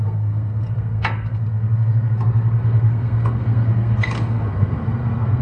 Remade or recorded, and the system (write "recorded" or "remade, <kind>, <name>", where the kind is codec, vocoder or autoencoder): remade, codec, SNAC